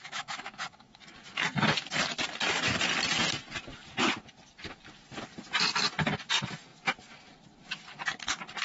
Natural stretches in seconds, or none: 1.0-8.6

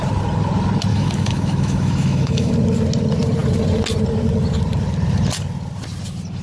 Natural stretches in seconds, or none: 0.0-0.9; 2.5-6.4

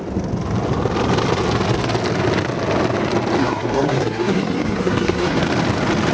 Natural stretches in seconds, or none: 0.0-3.4; 5.4-6.1

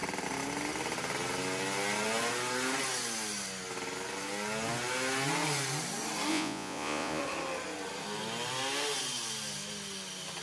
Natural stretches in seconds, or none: 0.0-6.3; 7.2-10.4

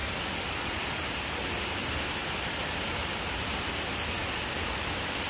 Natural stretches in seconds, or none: 0.0-5.3

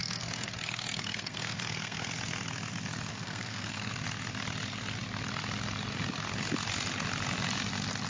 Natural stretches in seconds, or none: 2.1-3.1; 3.9-8.1

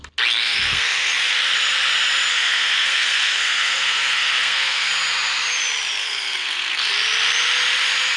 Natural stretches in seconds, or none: 0.0-0.4; 1.1-2.3; 4.9-6.0; 6.9-8.2